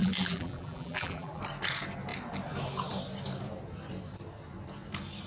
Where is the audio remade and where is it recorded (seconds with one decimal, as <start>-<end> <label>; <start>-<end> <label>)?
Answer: 0.0-1.4 remade; 1.4-5.3 recorded